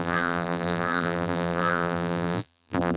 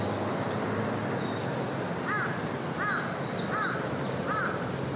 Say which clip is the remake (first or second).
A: first